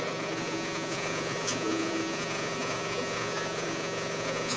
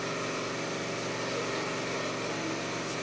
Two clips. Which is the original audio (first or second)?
second